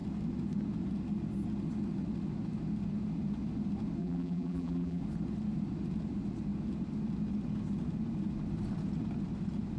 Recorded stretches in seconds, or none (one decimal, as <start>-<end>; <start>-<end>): 0.0-4.0; 5.0-9.8